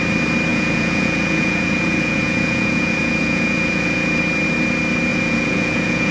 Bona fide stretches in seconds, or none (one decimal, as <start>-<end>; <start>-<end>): 0.0-0.5; 4.2-5.1

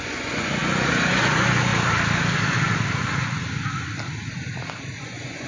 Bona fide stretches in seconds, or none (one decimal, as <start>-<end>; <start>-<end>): 1.7-5.0